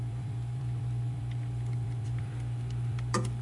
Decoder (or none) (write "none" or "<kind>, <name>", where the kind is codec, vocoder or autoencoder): vocoder, BigVGAN v2